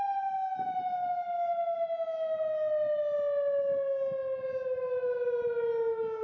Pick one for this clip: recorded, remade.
recorded